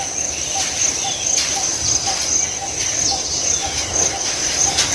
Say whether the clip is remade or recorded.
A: recorded